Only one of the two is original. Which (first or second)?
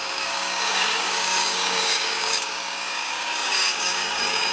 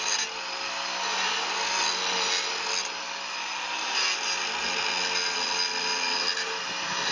second